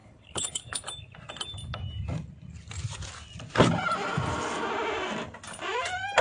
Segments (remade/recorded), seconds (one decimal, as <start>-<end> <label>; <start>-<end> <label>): 0.0-0.8 remade; 0.8-6.2 recorded